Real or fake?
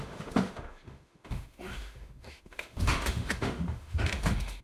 fake